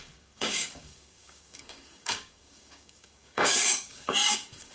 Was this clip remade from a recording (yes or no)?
yes